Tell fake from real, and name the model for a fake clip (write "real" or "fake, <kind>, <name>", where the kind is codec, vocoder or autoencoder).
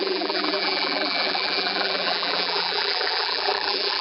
fake, vocoder, BigVGAN v2